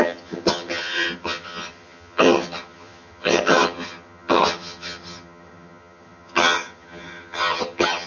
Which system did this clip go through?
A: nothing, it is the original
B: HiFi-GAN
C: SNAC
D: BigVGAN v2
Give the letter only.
B